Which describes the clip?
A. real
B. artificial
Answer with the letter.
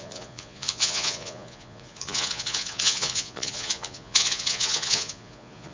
B